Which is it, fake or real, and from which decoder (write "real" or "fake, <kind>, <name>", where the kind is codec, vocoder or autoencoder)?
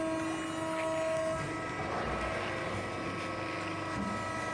real